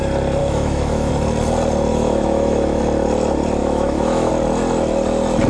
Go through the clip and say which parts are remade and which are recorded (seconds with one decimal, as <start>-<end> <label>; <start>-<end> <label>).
0.0-0.4 recorded; 0.4-1.1 remade; 1.1-1.9 recorded; 1.9-2.8 remade; 2.8-3.6 recorded; 3.6-4.3 remade; 4.3-5.5 recorded

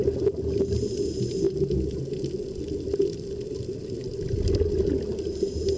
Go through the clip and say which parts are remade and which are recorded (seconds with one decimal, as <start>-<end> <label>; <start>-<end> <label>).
0.0-5.8 recorded

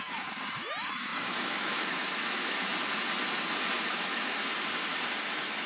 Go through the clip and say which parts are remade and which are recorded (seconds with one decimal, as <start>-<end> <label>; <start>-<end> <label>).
0.0-2.7 remade; 2.7-3.9 recorded; 3.9-4.5 remade; 4.5-5.3 recorded; 5.3-5.7 remade

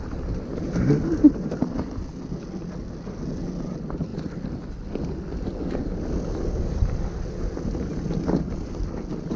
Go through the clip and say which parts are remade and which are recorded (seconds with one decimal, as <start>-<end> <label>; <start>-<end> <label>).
0.0-9.4 recorded

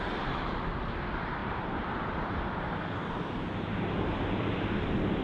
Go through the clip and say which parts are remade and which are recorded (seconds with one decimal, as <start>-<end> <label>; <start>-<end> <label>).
0.0-1.4 recorded; 1.4-2.4 remade; 2.4-5.2 recorded